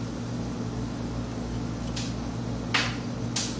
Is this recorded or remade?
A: recorded